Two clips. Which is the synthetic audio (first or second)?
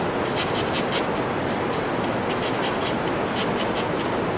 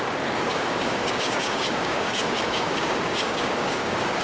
second